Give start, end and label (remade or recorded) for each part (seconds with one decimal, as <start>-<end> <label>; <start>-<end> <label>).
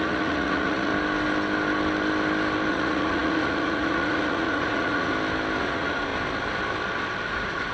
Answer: 0.0-0.9 remade; 0.9-2.7 recorded; 2.7-5.1 remade; 5.1-5.6 recorded; 5.6-6.1 remade; 6.1-7.3 recorded; 7.3-7.7 remade